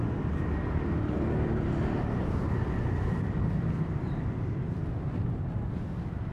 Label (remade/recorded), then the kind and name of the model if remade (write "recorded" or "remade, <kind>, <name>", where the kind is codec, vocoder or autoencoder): recorded